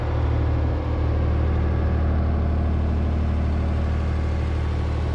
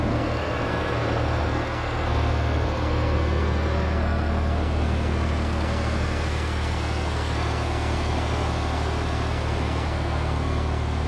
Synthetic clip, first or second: second